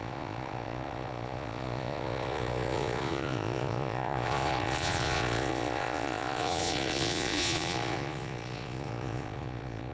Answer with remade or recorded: remade